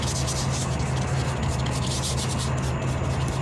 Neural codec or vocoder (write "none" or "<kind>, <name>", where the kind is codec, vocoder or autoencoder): none